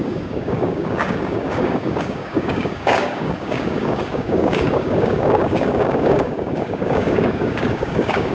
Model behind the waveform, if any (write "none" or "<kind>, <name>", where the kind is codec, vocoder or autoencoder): codec, DAC